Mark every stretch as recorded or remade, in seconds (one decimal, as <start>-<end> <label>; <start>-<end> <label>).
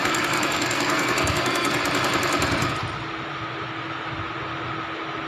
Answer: 0.0-1.8 remade; 1.8-5.3 recorded